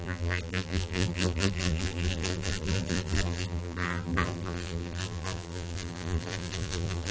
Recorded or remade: remade